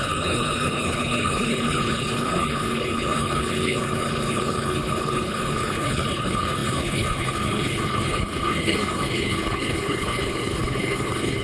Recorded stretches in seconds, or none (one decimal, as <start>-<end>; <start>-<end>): none